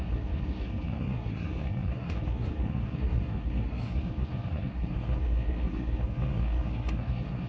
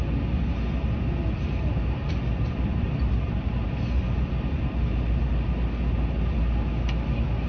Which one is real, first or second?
second